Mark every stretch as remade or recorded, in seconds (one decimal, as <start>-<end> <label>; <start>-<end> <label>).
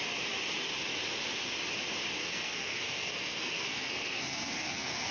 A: 0.0-2.2 recorded; 2.2-5.1 remade